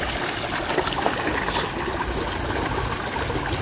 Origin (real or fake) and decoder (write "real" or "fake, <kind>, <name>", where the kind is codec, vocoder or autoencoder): real